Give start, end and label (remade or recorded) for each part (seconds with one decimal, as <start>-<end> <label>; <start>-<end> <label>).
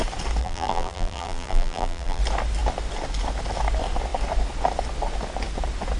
0.0-0.4 recorded; 0.4-2.2 remade; 2.2-6.0 recorded